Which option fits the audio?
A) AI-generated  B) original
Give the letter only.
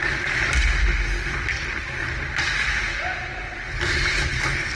B